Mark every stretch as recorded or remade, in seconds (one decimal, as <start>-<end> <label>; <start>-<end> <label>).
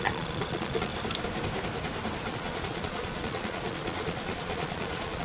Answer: 0.0-0.9 remade; 0.9-2.3 recorded; 2.3-5.2 remade